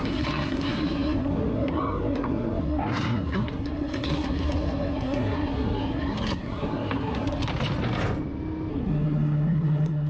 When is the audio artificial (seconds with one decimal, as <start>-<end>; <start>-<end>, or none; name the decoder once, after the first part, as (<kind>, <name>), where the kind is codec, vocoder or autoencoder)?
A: 0.0-7.5 (codec, SNAC); 8.7-10.1